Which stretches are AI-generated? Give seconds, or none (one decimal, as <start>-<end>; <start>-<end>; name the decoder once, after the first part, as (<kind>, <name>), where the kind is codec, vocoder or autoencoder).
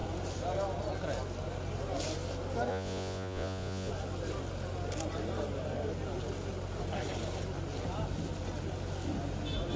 2.7-3.9 (vocoder, Vocos)